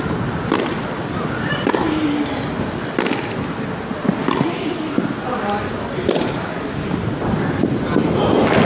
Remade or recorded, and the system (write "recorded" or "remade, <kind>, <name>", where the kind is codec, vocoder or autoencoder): recorded